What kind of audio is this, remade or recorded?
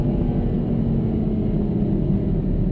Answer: recorded